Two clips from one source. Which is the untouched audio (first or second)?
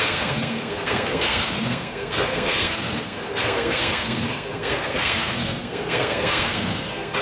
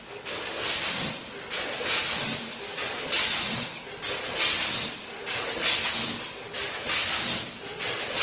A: second